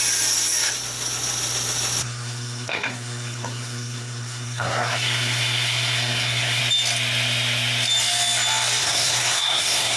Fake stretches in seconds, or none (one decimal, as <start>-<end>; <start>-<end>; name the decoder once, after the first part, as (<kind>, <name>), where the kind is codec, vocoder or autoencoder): 2.0-6.6 (codec, SNAC); 8.8-10.0